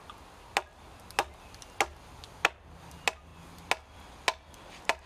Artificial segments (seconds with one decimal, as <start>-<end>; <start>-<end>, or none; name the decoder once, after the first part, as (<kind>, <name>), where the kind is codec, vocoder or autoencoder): none